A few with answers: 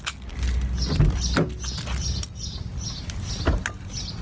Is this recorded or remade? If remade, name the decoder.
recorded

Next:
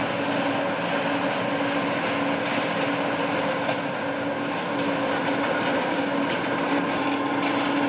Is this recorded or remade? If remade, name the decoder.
recorded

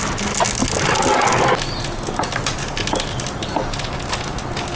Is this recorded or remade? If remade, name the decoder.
recorded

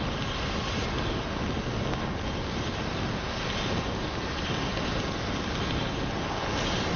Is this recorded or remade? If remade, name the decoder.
recorded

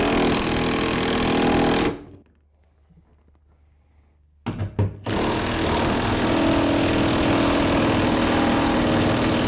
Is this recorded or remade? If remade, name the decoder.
recorded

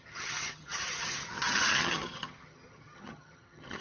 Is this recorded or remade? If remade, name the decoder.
remade, vocoder, HiFi-GAN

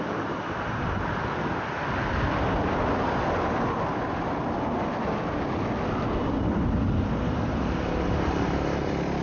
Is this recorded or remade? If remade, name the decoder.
recorded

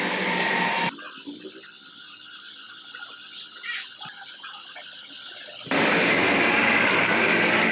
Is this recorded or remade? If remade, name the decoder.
recorded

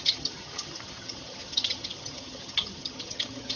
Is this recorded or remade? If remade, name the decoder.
remade, vocoder, HiFi-GAN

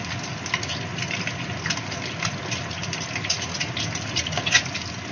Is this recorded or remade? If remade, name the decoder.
recorded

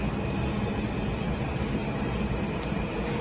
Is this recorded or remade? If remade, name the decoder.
recorded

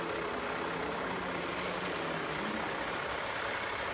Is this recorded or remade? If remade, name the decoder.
recorded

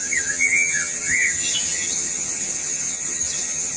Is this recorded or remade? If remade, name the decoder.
remade, vocoder, HiFi-GAN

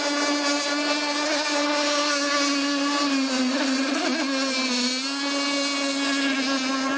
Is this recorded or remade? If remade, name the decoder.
recorded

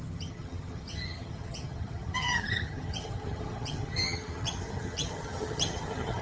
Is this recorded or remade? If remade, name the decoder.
remade, vocoder, HiFi-GAN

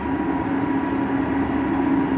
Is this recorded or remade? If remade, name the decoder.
recorded